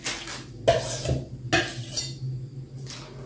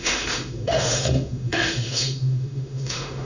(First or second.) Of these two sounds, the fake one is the second